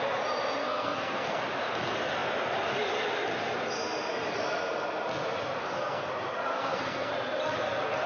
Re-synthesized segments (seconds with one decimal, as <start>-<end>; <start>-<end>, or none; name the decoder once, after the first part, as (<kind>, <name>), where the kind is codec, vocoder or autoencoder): 0.6-1.4 (codec, SNAC); 5.6-6.1; 6.5-7.1